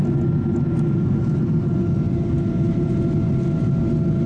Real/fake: real